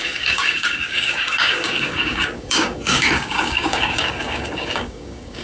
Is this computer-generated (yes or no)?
yes